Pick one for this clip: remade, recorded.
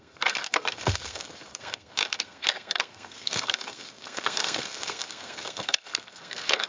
remade